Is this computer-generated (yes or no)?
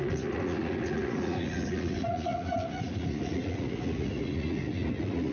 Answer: yes